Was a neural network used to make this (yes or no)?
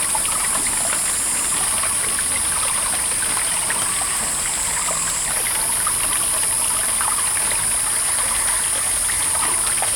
no